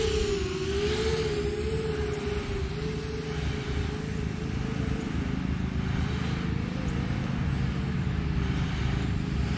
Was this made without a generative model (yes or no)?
yes